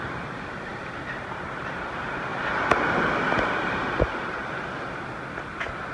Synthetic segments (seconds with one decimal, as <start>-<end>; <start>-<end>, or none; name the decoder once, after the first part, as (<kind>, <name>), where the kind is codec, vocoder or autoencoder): 0.0-2.3 (vocoder, BigVGAN v2)